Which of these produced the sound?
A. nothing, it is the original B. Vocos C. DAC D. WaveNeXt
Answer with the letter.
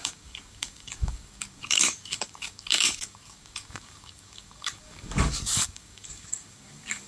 C